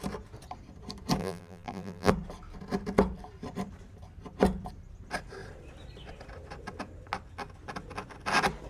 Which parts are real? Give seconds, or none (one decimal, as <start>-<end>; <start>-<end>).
0.0-1.2; 2.1-8.7